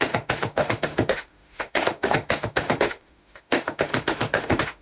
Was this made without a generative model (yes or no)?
no